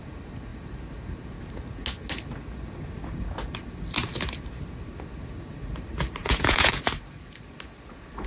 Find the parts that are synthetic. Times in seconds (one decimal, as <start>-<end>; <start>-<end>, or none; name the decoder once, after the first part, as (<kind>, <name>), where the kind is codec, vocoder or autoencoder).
6.2-6.8 (vocoder, Vocos)